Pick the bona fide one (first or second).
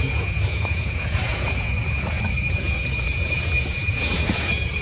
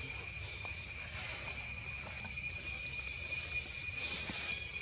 second